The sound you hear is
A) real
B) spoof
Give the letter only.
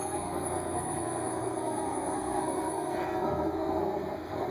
B